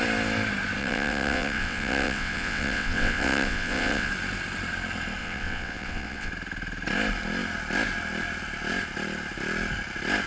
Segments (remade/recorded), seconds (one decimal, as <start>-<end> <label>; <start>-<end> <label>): 0.0-0.8 recorded; 0.8-4.1 remade; 4.1-5.2 recorded; 5.2-6.3 remade; 6.3-10.3 recorded